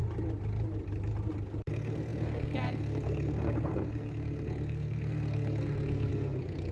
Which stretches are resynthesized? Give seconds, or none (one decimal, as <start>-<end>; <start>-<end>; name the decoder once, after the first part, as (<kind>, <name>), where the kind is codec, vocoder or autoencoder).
1.7-6.7 (codec, SNAC)